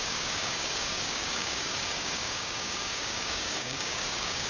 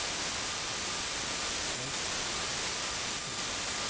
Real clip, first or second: second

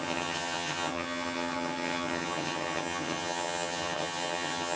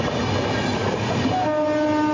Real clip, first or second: second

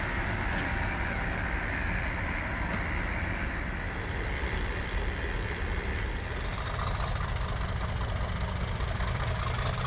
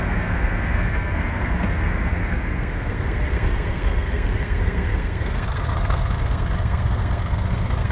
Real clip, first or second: first